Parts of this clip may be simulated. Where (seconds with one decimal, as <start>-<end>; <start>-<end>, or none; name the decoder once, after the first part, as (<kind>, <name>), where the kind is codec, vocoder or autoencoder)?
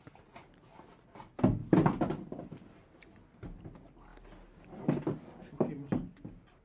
none